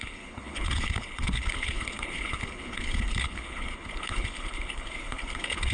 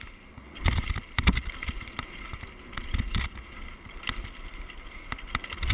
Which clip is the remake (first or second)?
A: first